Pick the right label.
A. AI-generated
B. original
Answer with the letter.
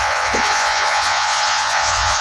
A